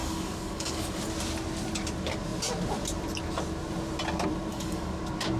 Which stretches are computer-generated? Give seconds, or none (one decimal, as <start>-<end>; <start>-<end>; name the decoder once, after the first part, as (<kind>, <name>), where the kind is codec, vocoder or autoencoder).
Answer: 0.0-1.0 (codec, DAC); 4.5-5.0